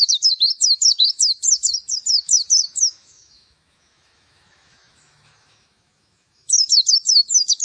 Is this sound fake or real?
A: fake